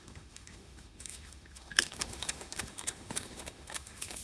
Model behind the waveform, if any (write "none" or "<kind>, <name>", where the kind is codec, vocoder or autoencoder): autoencoder, DAC-VAE